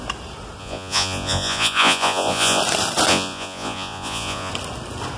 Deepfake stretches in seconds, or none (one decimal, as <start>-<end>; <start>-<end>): 0.6-2.6; 3.1-4.5